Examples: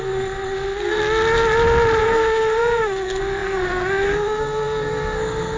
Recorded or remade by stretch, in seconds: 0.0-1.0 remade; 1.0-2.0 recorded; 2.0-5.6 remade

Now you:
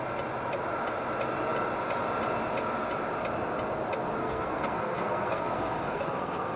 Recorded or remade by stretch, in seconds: 0.0-4.2 recorded; 4.2-6.6 remade

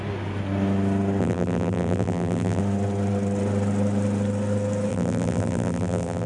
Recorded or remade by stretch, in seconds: 0.0-1.2 recorded; 1.2-2.6 remade; 2.6-4.9 recorded; 4.9-6.3 remade

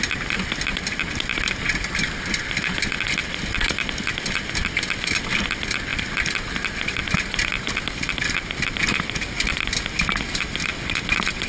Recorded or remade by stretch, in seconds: 0.0-11.5 recorded

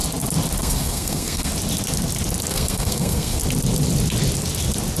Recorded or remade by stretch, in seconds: 0.0-0.6 recorded; 0.6-1.5 remade; 1.5-2.5 recorded; 2.5-3.4 remade; 3.4-5.0 recorded

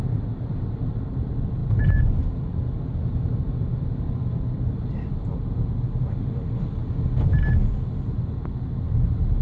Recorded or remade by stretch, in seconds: 0.0-9.4 recorded

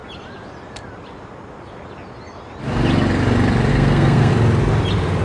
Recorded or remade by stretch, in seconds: 0.0-3.7 recorded; 3.7-4.3 remade; 4.3-5.2 recorded

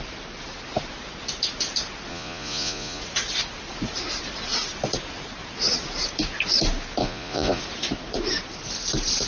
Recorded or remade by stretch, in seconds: 0.0-2.1 recorded; 2.1-3.0 remade; 3.0-7.0 recorded; 7.0-7.6 remade; 7.6-9.3 recorded